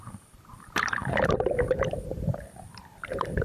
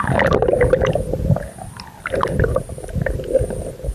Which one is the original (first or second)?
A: second